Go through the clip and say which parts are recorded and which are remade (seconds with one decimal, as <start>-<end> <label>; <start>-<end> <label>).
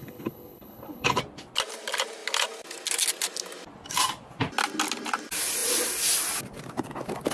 0.0-1.2 remade; 1.2-7.3 recorded